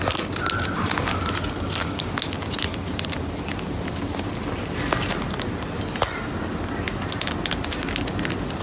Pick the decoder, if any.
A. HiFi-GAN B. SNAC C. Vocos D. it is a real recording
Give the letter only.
D